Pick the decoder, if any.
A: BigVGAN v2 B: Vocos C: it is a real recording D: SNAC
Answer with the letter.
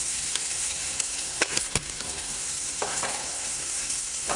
D